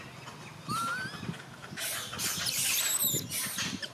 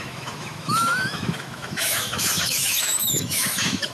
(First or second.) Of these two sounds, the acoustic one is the first